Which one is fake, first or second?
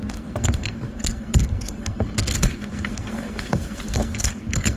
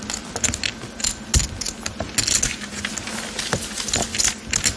first